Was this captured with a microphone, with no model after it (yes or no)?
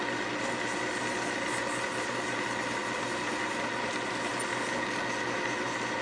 yes